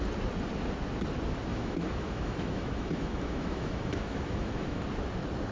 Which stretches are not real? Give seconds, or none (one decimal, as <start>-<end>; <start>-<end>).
1.5-4.8